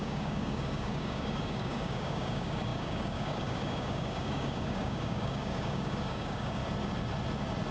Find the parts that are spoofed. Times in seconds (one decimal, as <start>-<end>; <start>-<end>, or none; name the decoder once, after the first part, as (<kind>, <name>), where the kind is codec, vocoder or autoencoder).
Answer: 0.0-6.6 (codec, DAC)

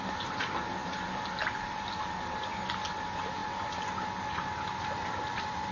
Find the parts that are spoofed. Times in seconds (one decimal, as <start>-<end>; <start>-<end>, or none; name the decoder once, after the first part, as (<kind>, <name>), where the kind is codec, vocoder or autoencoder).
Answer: none